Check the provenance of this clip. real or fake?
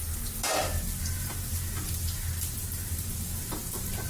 real